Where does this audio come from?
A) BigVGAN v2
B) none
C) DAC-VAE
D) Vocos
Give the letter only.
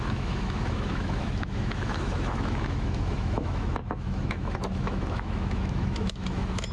C